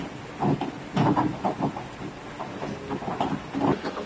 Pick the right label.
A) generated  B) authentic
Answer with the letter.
B